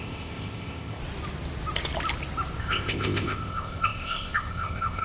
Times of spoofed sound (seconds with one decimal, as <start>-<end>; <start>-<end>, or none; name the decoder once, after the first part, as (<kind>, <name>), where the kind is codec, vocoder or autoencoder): 0.0-1.0 (codec, ZipCodec); 2.6-5.0